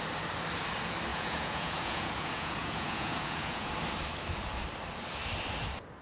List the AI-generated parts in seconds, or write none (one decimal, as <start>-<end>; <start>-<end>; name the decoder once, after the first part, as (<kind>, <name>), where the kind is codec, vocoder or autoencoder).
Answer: 1.1-3.7 (vocoder, Vocos)

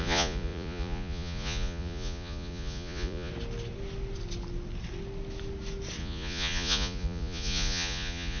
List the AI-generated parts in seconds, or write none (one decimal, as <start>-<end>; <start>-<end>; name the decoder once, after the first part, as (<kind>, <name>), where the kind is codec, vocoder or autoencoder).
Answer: 0.0-3.3 (vocoder, Vocos); 6.0-8.4